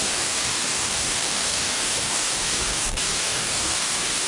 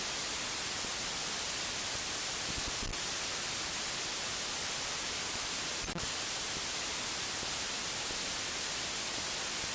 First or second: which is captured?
second